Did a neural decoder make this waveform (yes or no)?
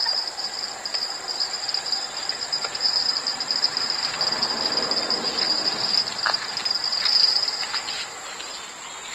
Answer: no